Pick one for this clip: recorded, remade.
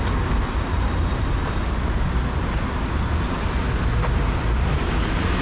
recorded